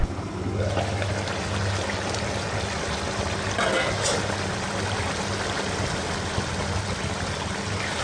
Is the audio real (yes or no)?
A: yes